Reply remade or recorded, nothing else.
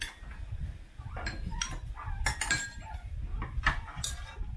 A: recorded